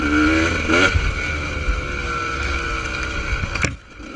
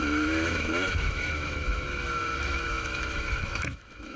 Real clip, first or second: first